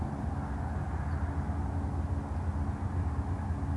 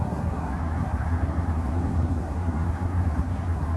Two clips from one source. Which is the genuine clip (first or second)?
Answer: first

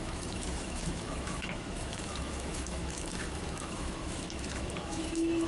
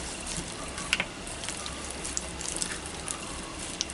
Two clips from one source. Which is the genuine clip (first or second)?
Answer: second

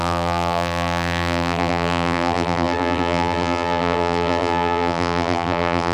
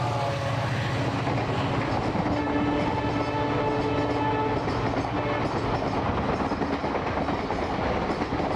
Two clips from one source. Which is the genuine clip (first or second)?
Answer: second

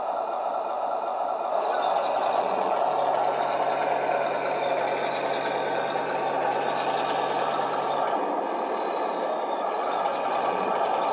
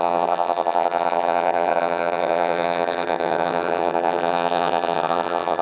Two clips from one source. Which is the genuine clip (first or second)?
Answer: first